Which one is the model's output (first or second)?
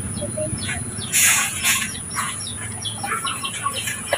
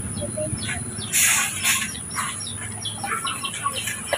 first